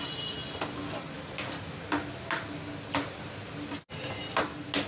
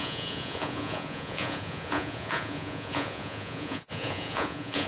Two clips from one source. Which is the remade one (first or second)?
second